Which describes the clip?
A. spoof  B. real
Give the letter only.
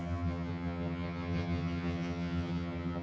A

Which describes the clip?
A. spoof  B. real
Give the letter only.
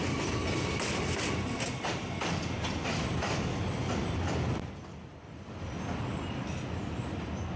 B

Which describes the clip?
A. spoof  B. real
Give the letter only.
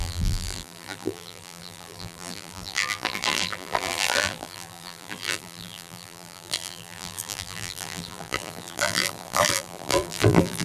A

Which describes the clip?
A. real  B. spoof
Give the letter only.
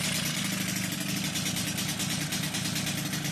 A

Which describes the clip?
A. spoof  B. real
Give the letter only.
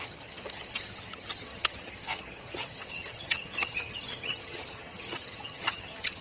A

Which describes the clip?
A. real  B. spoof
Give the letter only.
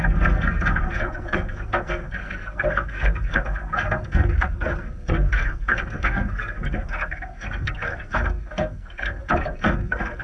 B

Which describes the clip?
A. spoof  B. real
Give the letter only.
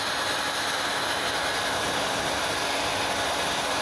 B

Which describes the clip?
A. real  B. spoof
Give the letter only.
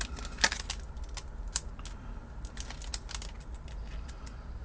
A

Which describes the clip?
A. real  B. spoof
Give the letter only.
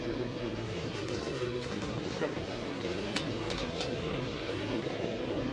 B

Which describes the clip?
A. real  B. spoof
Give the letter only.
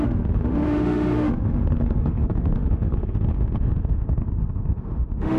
B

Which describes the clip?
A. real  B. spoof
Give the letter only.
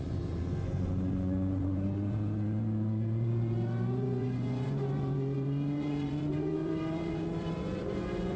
B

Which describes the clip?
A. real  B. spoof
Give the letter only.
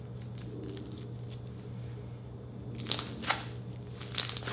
A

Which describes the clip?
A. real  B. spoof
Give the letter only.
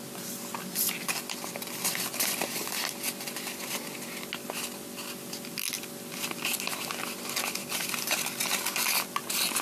A